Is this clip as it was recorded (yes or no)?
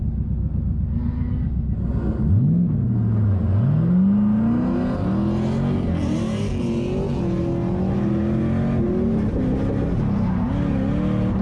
yes